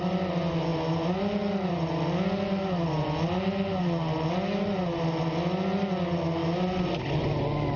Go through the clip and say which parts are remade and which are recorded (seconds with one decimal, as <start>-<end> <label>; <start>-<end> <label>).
0.0-7.8 recorded